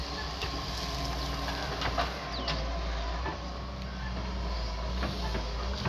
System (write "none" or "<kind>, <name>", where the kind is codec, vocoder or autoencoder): none